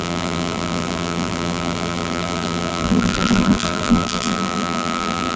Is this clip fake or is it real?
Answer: fake